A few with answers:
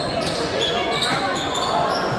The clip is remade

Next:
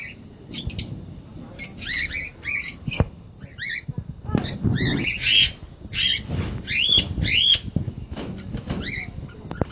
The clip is recorded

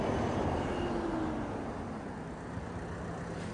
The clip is recorded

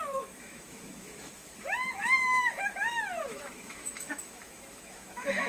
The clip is remade